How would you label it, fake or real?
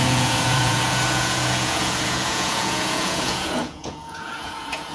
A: fake